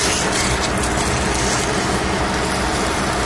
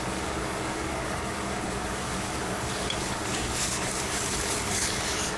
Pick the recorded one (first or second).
first